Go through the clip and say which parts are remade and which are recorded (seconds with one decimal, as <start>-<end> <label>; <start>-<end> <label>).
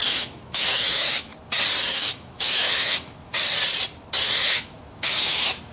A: 0.0-1.3 remade; 1.3-1.9 recorded; 1.9-3.3 remade; 3.3-4.3 recorded; 4.3-5.7 remade